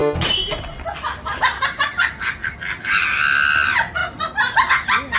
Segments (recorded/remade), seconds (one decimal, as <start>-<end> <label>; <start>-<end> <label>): 0.0-5.2 recorded